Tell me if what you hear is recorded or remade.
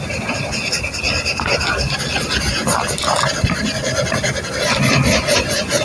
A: recorded